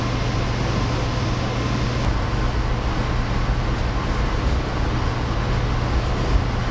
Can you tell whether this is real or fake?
real